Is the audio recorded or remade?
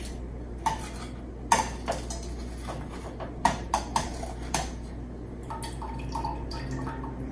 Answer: recorded